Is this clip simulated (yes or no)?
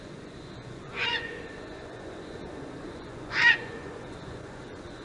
yes